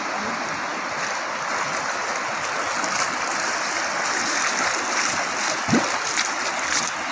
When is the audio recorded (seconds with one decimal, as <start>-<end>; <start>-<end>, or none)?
0.0-7.1